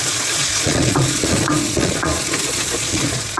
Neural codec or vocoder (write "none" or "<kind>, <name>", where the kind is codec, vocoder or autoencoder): vocoder, Vocos